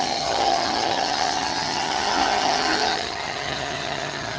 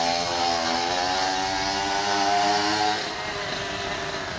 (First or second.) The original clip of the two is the second